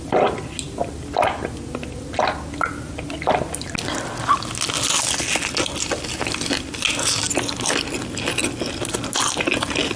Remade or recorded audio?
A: recorded